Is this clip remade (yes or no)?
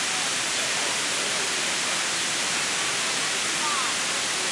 no